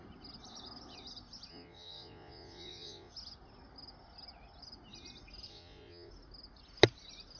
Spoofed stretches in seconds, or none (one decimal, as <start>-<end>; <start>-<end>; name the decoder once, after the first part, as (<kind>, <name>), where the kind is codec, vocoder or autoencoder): 1.5-3.1 (vocoder, Vocos); 5.5-6.1